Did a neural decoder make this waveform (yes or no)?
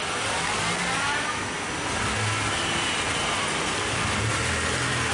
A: no